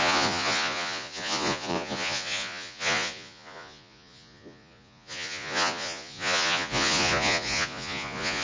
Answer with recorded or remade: remade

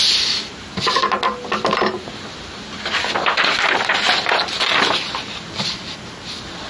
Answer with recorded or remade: recorded